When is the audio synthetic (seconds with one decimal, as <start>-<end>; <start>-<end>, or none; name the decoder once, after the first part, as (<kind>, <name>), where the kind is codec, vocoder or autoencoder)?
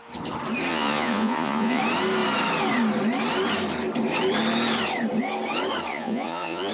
0.7-1.8 (vocoder, Vocos); 5.9-6.7